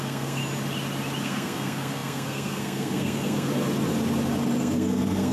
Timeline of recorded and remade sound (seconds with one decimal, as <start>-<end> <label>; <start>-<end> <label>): 0.0-0.4 remade; 0.4-1.2 recorded; 1.2-3.5 remade; 3.5-4.6 recorded; 4.6-5.3 remade